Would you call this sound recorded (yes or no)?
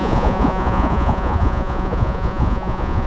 no